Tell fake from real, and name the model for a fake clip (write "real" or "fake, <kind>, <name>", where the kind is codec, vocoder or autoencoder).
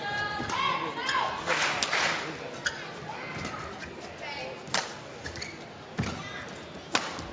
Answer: real